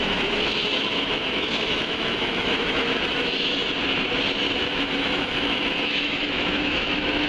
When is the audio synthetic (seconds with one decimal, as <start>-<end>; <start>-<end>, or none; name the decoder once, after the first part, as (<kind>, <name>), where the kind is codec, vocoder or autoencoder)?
0.0-3.6 (autoencoder, DAC-VAE); 4.6-7.3